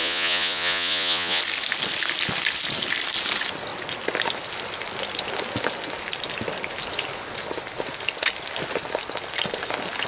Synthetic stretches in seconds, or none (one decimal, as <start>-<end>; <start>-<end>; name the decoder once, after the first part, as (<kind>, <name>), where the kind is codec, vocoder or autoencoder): 0.0-1.4 (vocoder, Vocos)